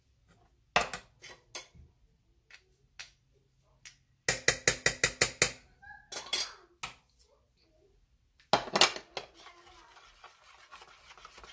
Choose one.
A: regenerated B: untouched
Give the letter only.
B